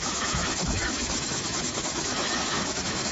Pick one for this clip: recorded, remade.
remade